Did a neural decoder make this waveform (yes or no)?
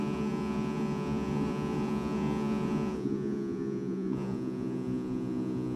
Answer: yes